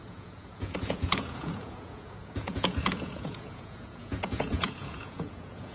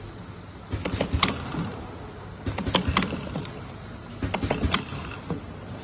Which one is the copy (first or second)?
first